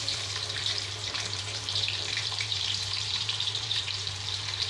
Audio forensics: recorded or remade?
remade